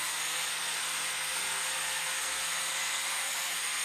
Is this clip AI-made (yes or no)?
yes